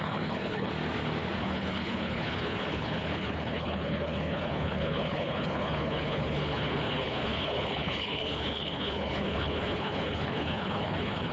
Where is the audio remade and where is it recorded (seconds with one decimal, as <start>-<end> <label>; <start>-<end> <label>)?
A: 0.0-0.7 remade; 0.7-1.4 recorded; 1.4-11.3 remade